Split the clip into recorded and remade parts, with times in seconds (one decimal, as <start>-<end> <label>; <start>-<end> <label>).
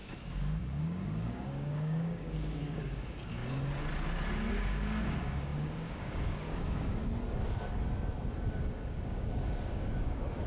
0.0-3.4 remade; 3.4-4.5 recorded; 4.5-7.0 remade; 7.0-8.5 recorded; 8.5-10.5 remade